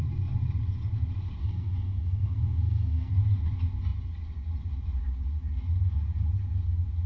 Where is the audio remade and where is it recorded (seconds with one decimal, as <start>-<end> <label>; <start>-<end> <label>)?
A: 0.0-1.4 recorded; 1.4-3.1 remade; 3.1-7.1 recorded